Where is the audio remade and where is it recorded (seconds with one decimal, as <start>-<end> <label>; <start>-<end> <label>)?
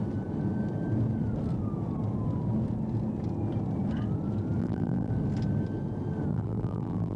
0.0-4.6 recorded; 4.6-5.1 remade; 5.1-6.3 recorded; 6.3-7.2 remade